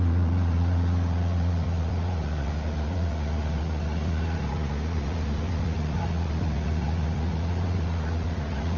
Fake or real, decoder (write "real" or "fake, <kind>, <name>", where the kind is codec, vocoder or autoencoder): fake, vocoder, Vocos